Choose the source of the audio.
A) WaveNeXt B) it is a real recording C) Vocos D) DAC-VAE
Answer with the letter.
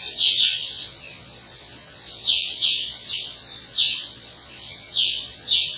C